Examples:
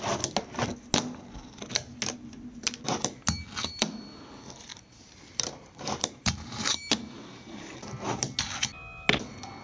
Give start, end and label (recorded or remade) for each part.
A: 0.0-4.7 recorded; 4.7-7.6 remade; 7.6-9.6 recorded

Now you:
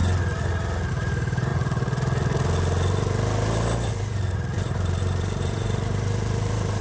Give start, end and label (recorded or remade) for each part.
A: 0.0-0.9 recorded; 0.9-1.5 remade; 1.5-4.0 recorded; 4.0-6.8 remade